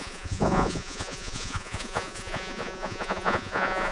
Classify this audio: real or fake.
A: fake